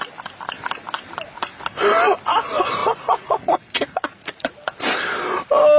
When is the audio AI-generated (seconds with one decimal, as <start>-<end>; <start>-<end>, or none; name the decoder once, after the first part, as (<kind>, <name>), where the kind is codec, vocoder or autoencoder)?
2.8-4.5 (vocoder, Vocos)